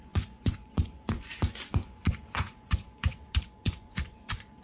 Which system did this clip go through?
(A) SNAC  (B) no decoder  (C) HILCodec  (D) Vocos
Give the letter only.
D